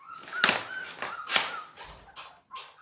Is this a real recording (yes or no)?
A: yes